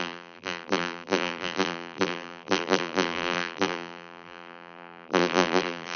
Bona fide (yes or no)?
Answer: no